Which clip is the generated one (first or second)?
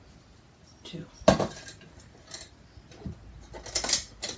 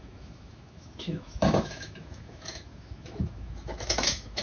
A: second